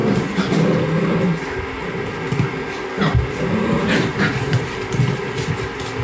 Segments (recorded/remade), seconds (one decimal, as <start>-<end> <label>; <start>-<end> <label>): 0.0-6.0 recorded